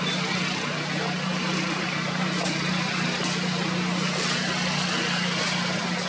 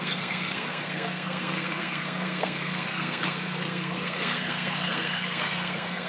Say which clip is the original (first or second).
first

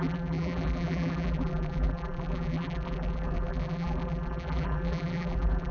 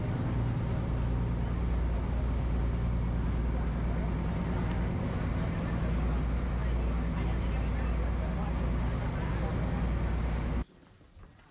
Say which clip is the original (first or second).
second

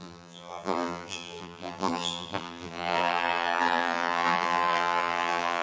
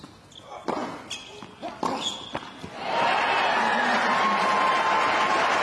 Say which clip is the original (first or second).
second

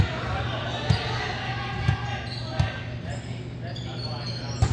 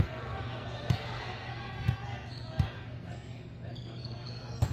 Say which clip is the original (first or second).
first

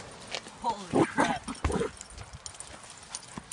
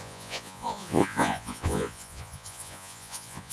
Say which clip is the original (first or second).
first